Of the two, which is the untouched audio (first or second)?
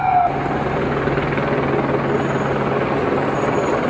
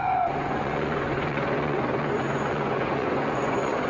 first